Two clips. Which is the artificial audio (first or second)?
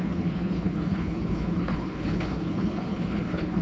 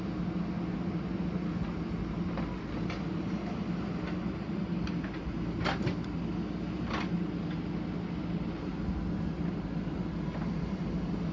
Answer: first